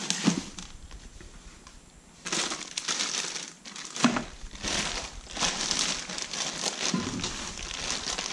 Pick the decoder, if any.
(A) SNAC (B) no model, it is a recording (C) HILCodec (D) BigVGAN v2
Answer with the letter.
B